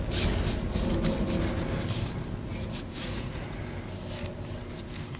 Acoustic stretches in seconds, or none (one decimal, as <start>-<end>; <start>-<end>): 0.0-2.5; 3.6-5.2